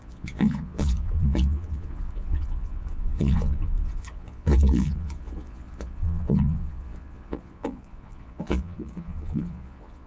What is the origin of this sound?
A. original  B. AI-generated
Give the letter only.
B